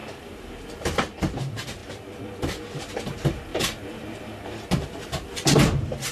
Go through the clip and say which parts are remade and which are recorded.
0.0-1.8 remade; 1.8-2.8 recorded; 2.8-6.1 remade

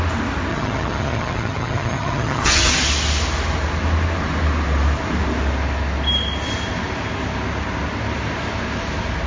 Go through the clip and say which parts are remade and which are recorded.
0.0-0.5 recorded; 0.5-2.7 remade; 2.7-9.3 recorded